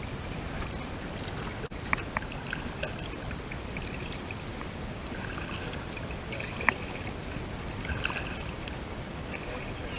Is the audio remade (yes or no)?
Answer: no